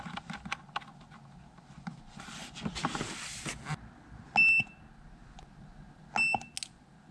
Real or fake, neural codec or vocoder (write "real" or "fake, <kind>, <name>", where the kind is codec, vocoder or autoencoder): real